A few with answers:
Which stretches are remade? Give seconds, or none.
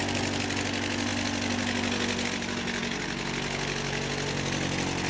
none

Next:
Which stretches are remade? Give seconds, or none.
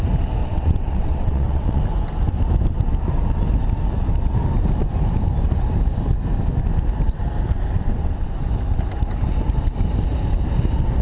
0.4-1.8 (vocoder, WaveNeXt); 7.8-8.3